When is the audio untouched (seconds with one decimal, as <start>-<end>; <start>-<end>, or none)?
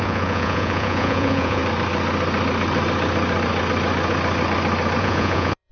1.6-5.0